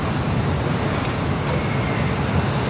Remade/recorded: recorded